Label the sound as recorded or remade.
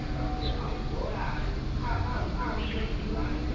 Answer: recorded